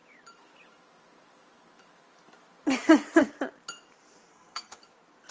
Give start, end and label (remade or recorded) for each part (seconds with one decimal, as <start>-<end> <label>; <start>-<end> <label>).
0.0-4.3 recorded; 4.3-4.8 remade; 4.8-5.3 recorded